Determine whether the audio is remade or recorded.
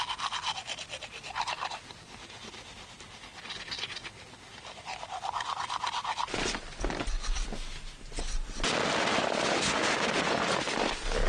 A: recorded